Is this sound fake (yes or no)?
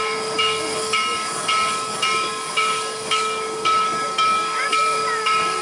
yes